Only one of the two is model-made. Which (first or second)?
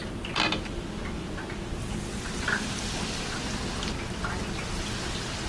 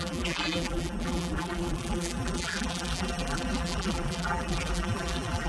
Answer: second